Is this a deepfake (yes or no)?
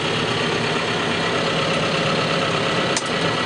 no